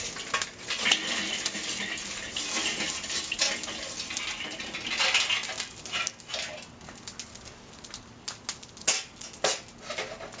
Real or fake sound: real